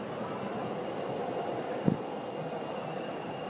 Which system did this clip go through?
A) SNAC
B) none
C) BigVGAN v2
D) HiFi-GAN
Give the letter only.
B